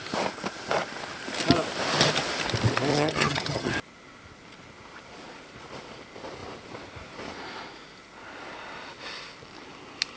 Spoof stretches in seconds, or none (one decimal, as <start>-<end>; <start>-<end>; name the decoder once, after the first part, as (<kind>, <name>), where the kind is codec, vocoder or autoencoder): 2.9-3.7 (vocoder, HiFi-GAN)